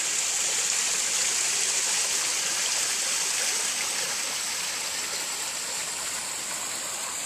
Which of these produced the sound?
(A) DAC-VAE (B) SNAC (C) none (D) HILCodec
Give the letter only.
C